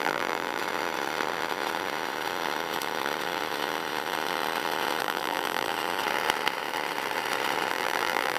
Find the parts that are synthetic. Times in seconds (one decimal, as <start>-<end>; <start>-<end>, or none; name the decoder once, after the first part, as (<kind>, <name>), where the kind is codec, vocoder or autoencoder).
0.0-0.6 (vocoder, BigVGAN v2); 5.0-5.7; 7.7-8.4